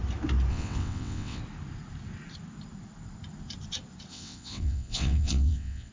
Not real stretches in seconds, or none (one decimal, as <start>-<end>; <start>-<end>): 0.5-1.4; 4.1-5.9